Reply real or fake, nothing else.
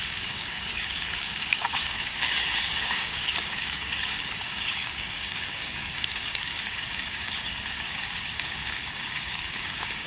fake